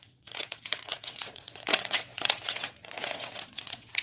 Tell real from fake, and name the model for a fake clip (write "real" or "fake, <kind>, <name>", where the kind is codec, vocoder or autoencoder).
fake, vocoder, WaveNeXt